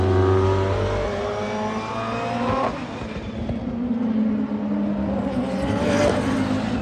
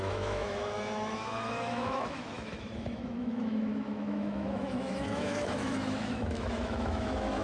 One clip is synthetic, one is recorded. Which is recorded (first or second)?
first